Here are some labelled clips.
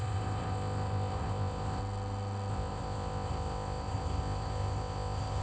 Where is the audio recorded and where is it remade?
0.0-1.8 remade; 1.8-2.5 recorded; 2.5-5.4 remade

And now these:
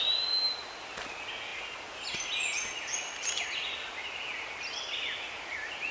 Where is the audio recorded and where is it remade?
0.0-5.9 recorded

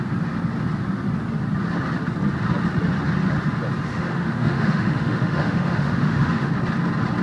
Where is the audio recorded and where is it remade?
0.0-3.9 recorded; 3.9-6.5 remade; 6.5-7.2 recorded

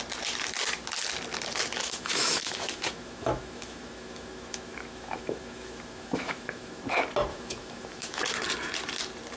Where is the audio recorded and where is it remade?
0.0-1.8 recorded; 1.8-6.8 remade; 6.8-7.3 recorded; 7.3-8.2 remade; 8.2-9.4 recorded

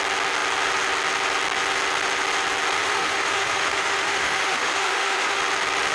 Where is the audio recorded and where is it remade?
0.0-2.8 recorded; 2.8-5.4 remade; 5.4-5.9 recorded

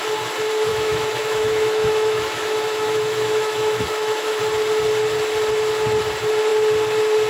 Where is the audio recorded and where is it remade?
0.0-0.7 recorded; 0.7-4.4 remade; 4.4-7.3 recorded

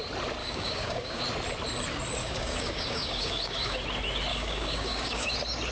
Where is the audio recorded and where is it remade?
0.0-0.4 recorded; 0.4-1.2 remade; 1.2-2.2 recorded; 2.2-3.8 remade; 3.8-4.3 recorded; 4.3-5.3 remade; 5.3-5.7 recorded

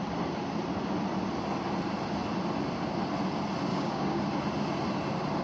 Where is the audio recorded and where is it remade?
0.0-3.7 recorded; 3.7-4.2 remade; 4.2-5.4 recorded